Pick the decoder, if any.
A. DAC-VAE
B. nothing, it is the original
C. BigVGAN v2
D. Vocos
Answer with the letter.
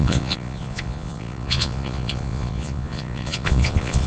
D